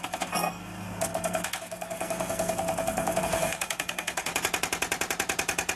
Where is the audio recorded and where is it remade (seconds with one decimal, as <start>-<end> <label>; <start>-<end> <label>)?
0.0-4.3 remade; 4.3-5.8 recorded